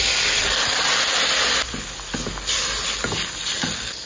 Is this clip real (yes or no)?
yes